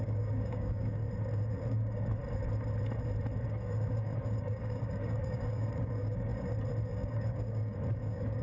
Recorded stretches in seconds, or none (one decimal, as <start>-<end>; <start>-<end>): 1.0-1.7; 2.2-3.5; 6.3-6.9